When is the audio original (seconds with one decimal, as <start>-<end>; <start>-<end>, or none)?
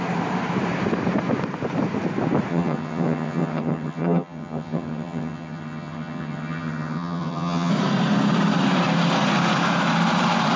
0.0-2.5; 7.7-10.6